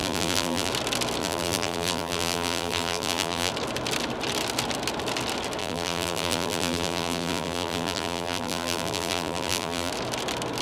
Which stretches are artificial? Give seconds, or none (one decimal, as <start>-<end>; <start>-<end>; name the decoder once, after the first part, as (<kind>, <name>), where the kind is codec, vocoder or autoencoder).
0.0-0.7 (vocoder, BigVGAN v2); 1.2-3.5; 5.6-9.9